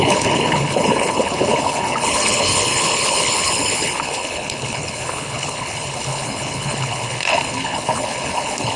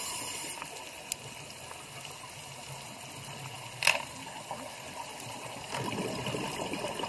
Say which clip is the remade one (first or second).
first